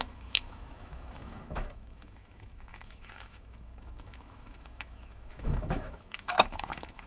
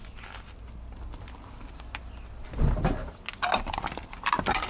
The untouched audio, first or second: second